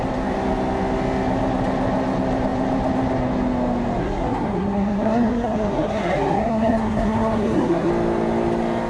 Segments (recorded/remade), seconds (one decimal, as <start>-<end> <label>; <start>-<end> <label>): 0.0-4.0 recorded; 4.0-7.9 remade; 7.9-8.9 recorded